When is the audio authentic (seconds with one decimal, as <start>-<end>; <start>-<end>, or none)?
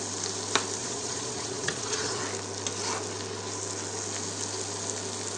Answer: 0.0-0.8; 2.2-5.4